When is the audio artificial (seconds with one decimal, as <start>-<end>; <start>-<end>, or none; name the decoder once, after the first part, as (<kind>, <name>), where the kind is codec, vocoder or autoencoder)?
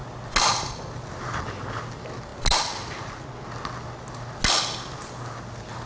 none